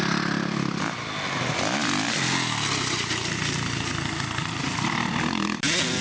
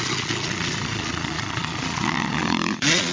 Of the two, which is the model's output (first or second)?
second